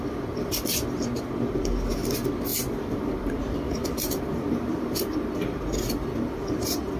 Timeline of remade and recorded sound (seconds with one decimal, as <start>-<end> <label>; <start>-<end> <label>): 0.0-2.5 recorded; 2.5-6.6 remade; 6.6-7.0 recorded